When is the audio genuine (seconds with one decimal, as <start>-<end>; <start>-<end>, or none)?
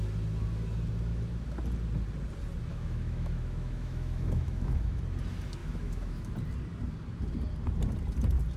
0.0-2.7; 5.0-5.6; 6.3-8.6